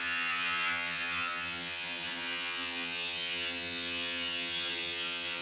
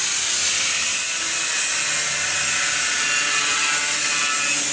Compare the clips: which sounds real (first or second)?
second